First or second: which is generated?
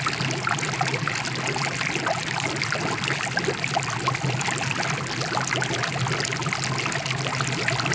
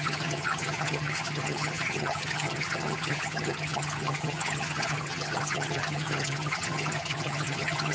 second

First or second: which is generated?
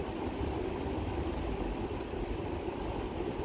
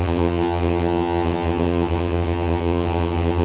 second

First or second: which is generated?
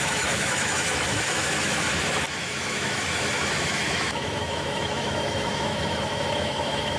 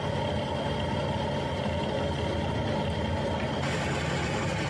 first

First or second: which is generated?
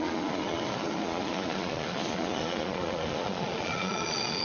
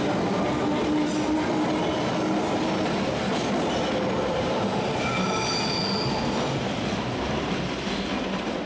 first